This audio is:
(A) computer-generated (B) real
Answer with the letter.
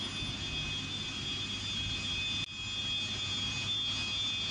B